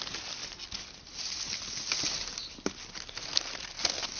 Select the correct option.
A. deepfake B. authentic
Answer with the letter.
B